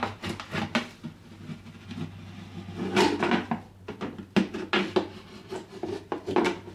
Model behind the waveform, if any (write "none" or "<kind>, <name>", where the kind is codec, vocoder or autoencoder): none